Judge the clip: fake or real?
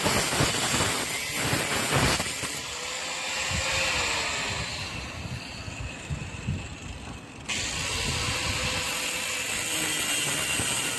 real